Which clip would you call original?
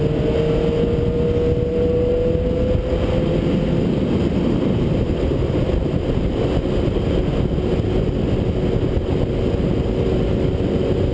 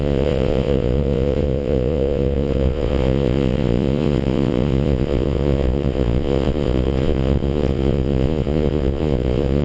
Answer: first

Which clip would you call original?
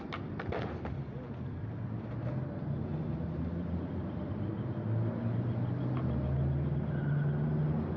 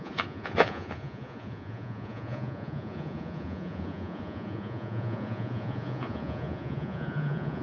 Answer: first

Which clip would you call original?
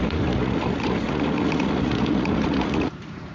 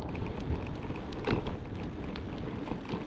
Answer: second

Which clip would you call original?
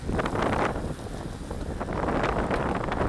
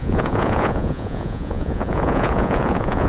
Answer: first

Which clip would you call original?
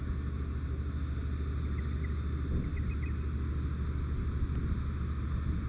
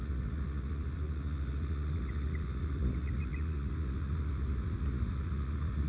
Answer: first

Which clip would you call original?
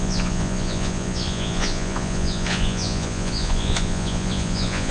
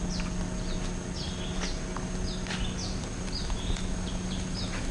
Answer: second